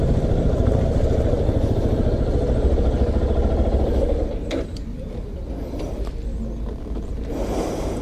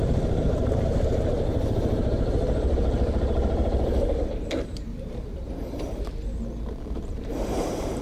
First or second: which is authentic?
first